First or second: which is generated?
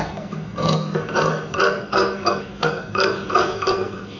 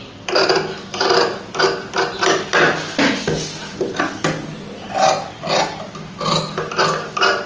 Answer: first